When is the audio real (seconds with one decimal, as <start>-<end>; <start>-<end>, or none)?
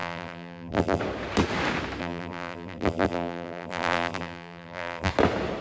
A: 1.0-2.0; 5.1-5.6